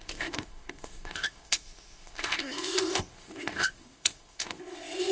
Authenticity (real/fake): fake